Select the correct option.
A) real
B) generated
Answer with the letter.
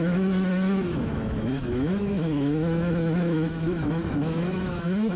B